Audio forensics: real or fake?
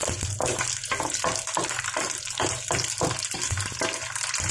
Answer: real